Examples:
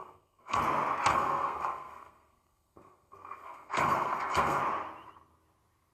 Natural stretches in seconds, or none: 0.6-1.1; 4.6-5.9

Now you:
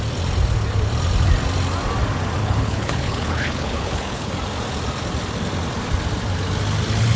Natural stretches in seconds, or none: 0.0-2.4; 4.3-7.2

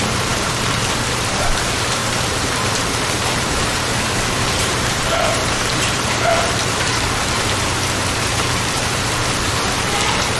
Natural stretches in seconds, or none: none

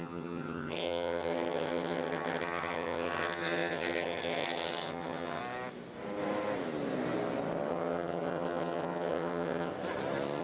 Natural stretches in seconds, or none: 5.4-7.7; 9.7-10.4

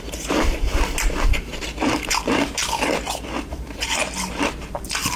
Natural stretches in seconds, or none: 0.7-1.3; 2.6-3.5; 4.0-4.7

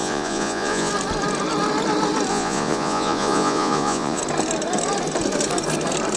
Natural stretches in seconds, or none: 0.9-2.3; 4.2-6.2

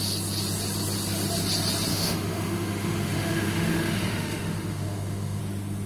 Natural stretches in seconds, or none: 0.0-1.9; 5.4-5.9